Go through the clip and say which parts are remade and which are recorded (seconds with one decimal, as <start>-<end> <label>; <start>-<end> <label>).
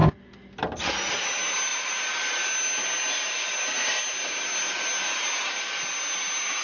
0.0-6.6 recorded